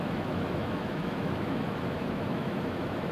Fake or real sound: fake